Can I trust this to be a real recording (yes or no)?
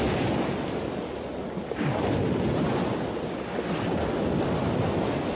yes